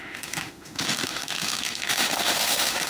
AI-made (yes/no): yes